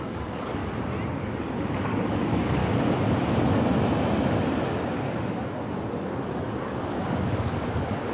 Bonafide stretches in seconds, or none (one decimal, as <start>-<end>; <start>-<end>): 0.6-1.2; 2.6-6.3